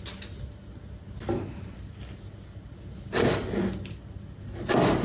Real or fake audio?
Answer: real